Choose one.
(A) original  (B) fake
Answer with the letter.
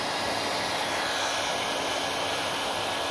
A